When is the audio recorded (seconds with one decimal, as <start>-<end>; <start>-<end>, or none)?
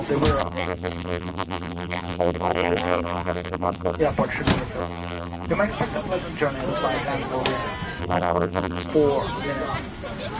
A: 0.0-0.4; 4.0-4.8; 5.5-8.0; 8.9-10.4